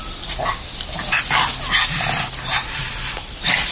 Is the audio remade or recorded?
recorded